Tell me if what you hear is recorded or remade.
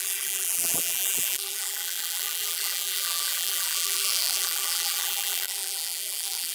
remade